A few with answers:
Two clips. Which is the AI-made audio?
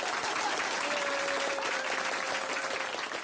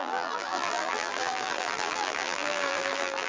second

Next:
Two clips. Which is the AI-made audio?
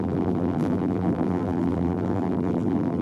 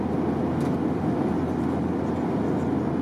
first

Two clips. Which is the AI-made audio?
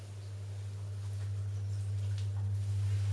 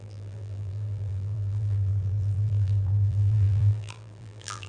second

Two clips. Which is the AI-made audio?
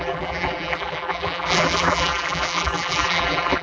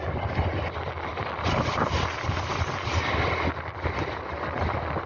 first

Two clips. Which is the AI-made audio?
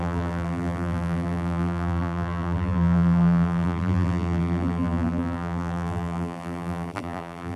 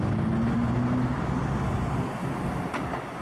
first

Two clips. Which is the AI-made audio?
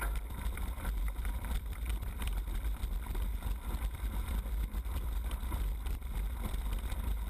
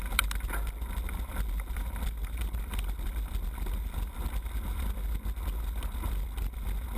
first